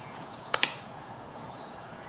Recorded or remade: remade